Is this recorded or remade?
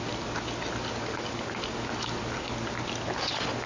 recorded